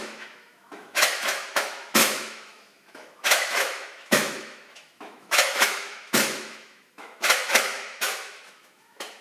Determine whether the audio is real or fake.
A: fake